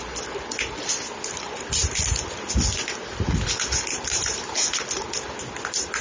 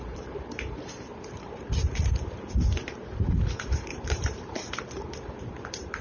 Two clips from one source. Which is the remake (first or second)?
second